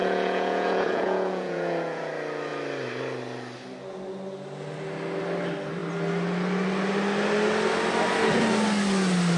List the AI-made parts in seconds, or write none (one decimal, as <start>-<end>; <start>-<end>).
0.0-2.1